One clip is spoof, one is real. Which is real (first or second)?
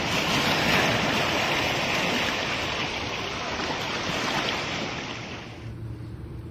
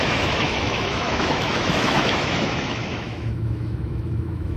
first